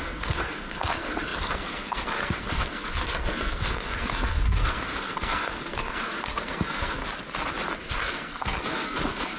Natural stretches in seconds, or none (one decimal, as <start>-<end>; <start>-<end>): 7.0-7.8